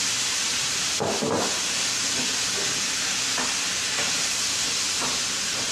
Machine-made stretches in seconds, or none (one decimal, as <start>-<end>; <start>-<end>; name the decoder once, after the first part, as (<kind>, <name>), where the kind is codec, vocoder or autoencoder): none